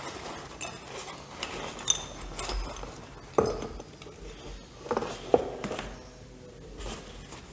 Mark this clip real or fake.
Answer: real